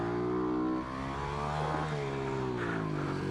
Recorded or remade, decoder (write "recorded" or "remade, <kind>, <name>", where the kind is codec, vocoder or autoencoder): recorded